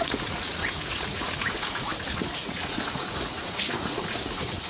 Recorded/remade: remade